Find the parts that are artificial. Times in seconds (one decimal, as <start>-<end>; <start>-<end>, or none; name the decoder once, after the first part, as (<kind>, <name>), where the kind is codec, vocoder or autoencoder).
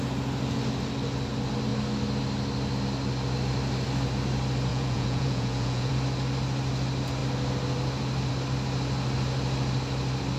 4.7-5.9 (vocoder, Vocos)